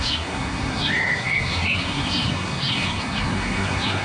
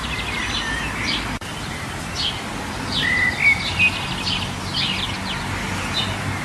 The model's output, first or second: first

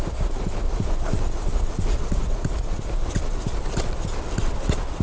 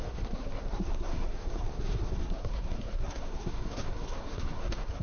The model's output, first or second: second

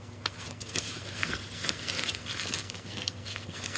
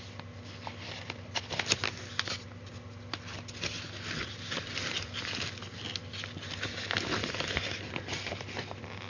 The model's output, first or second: first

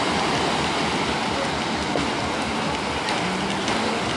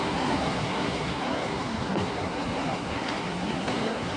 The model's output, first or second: second